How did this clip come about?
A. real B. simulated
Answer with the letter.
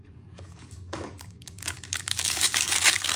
B